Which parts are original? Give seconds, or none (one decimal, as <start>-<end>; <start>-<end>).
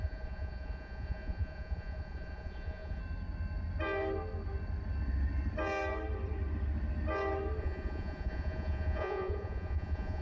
3.0-7.6